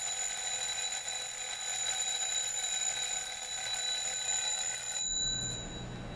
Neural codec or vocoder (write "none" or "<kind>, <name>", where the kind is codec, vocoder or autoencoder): none